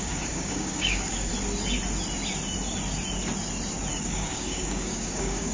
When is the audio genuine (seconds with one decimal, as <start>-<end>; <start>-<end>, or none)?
1.3-3.9